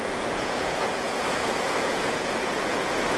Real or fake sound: fake